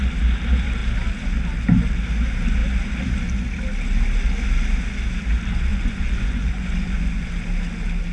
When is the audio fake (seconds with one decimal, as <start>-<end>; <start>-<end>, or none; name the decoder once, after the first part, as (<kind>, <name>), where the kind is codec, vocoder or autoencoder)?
5.7-7.3 (vocoder, Vocos)